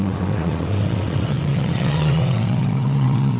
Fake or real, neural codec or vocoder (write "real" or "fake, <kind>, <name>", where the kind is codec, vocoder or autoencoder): fake, vocoder, WaveNeXt